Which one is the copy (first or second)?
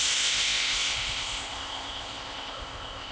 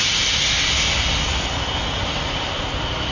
first